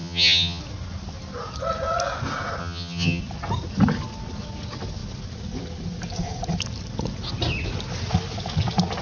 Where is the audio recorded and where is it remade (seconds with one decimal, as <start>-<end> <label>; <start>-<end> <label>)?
0.0-0.6 remade; 0.6-2.6 recorded; 2.6-3.2 remade; 3.2-9.0 recorded